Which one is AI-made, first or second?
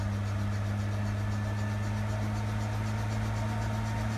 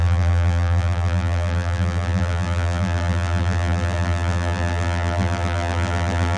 second